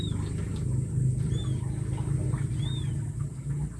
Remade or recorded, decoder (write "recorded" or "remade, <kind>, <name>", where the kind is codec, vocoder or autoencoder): recorded